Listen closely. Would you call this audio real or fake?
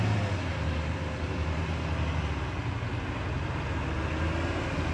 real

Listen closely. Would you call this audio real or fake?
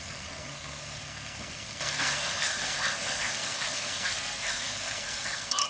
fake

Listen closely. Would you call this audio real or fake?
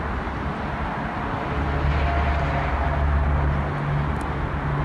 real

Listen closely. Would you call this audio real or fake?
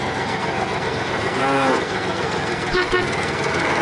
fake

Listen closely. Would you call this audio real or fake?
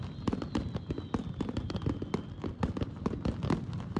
real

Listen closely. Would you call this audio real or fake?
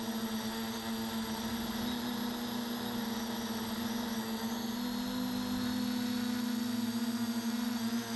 real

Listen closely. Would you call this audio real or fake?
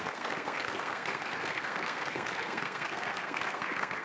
fake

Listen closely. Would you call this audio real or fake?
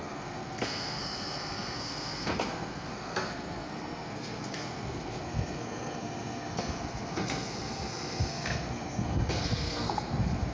fake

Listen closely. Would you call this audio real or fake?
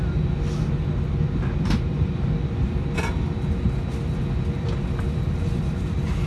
real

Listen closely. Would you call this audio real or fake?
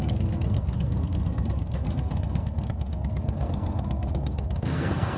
fake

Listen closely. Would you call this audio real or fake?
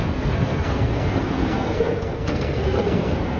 fake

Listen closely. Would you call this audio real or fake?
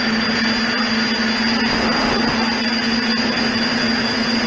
real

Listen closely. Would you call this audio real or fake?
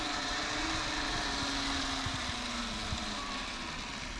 real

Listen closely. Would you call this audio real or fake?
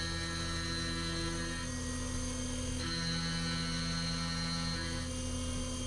real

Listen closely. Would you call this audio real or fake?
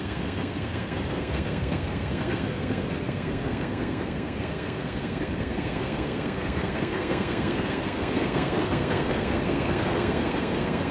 fake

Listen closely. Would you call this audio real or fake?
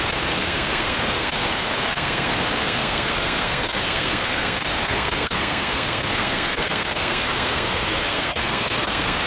fake